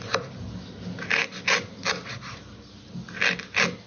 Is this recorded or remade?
recorded